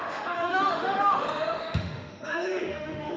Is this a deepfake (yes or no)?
yes